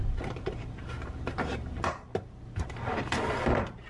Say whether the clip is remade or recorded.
remade